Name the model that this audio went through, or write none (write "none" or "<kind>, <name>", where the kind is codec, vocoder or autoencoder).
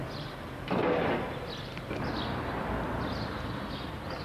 none